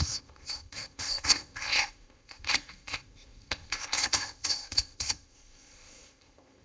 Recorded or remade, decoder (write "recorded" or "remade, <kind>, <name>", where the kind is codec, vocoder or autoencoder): remade, codec, ZipCodec